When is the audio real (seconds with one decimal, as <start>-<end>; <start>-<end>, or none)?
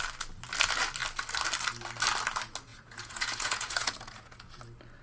0.0-2.7; 4.6-5.0